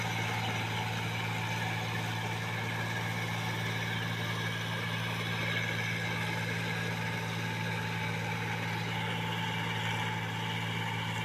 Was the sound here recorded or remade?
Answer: recorded